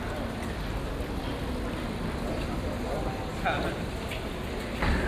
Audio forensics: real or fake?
real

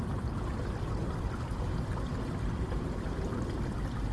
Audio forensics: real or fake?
real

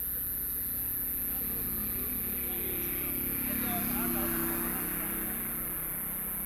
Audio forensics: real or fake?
real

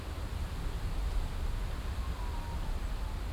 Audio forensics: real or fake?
real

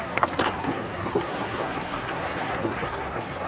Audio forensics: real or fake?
fake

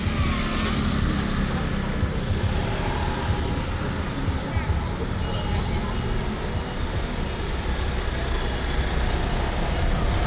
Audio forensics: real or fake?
real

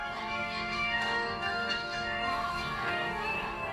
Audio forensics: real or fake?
fake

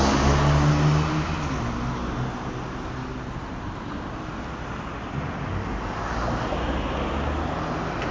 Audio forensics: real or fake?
real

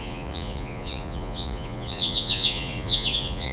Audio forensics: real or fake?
fake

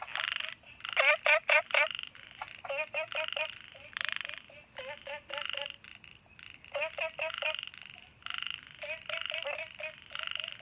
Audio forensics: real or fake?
fake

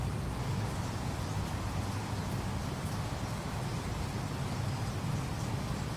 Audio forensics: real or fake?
real